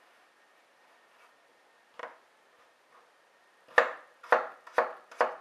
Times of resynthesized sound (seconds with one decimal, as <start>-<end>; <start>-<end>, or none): none